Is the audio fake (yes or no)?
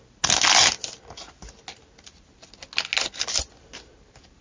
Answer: no